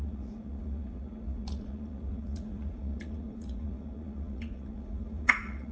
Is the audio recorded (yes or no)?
no